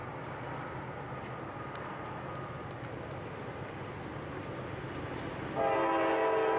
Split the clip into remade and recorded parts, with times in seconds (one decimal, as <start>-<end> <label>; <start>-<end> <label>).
0.0-6.6 recorded